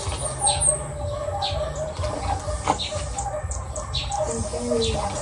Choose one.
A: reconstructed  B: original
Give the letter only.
B